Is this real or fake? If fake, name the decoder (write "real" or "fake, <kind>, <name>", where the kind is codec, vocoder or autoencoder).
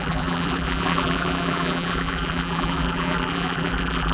fake, vocoder, BigVGAN v2